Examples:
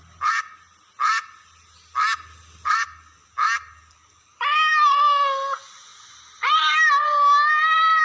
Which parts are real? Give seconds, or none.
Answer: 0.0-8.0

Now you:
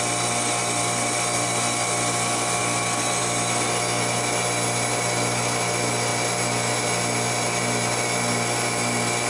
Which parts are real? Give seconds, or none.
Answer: 0.0-9.3

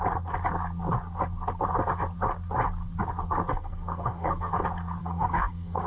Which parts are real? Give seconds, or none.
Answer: 0.0-3.5; 4.5-5.0

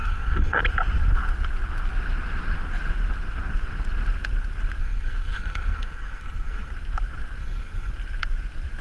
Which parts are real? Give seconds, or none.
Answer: 0.6-4.8; 6.7-7.4; 7.9-8.8